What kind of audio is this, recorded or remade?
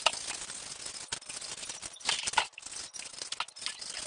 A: recorded